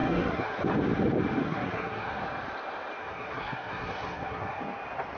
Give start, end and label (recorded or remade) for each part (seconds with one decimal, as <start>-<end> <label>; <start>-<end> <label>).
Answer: 0.0-0.6 remade; 0.6-1.4 recorded; 1.4-2.2 remade; 2.2-3.0 recorded; 3.0-4.6 remade; 4.6-5.2 recorded